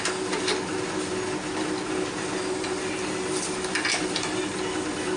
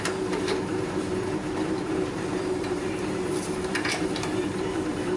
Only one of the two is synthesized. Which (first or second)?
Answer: second